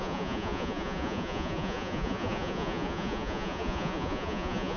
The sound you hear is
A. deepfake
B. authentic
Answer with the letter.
A